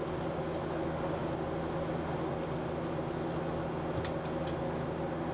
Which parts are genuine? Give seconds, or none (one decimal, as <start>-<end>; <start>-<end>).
0.0-5.3